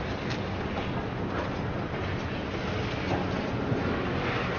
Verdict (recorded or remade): recorded